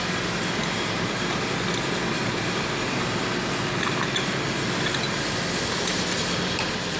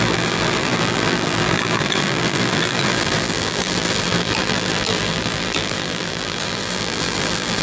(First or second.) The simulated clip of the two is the second